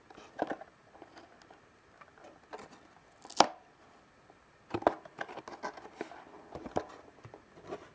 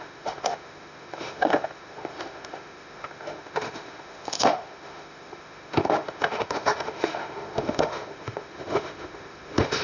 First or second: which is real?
first